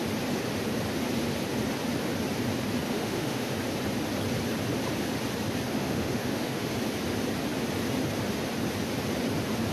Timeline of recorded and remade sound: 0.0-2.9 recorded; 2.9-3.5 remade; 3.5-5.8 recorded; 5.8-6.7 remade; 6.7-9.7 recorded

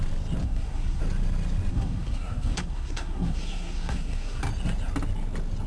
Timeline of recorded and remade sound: 0.0-0.4 recorded; 0.4-1.0 remade; 1.0-1.7 recorded; 1.7-4.4 remade; 4.4-5.7 recorded